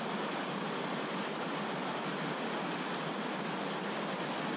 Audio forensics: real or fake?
real